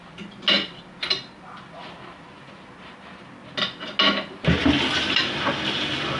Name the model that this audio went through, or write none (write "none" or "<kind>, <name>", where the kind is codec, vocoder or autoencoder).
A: none